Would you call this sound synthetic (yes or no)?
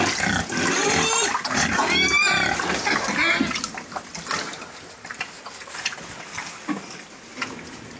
no